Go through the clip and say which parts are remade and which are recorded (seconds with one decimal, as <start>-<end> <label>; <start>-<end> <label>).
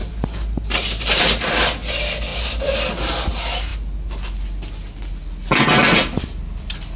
0.0-7.0 recorded